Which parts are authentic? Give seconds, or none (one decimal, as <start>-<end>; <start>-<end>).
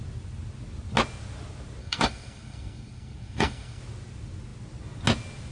0.0-1.8; 3.8-5.5